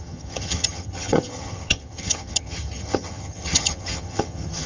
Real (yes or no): no